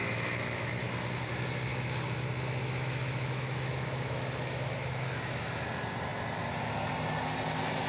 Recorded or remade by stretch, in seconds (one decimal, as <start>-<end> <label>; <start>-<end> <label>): 0.0-0.9 remade; 0.9-1.7 recorded; 1.7-5.5 remade; 5.5-7.9 recorded